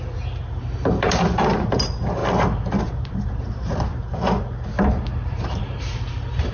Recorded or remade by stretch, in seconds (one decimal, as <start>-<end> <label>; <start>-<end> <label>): 0.0-2.2 remade; 2.2-2.8 recorded; 2.8-3.9 remade; 3.9-5.1 recorded; 5.1-6.5 remade

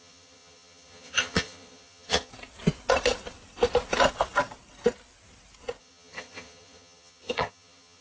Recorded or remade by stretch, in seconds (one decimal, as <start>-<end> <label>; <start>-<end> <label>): 0.0-2.3 remade; 2.3-5.8 recorded; 5.8-8.0 remade

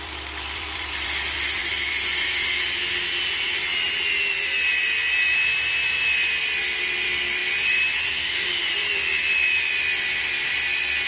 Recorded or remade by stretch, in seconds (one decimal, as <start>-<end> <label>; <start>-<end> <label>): 0.0-2.8 remade; 2.8-4.3 recorded; 4.3-11.1 remade

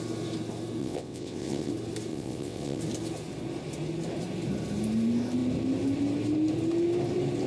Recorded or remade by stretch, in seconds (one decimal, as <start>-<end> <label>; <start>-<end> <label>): 0.0-0.8 recorded; 0.8-1.7 remade; 1.7-2.1 recorded; 2.1-2.8 remade; 2.8-7.5 recorded

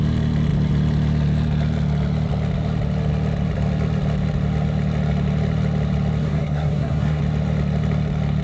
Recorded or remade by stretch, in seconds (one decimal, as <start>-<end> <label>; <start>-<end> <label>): 0.0-6.2 recorded; 6.2-7.2 remade; 7.2-8.4 recorded

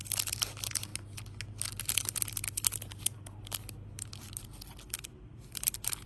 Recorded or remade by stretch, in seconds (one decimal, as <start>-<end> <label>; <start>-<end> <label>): 0.0-6.1 recorded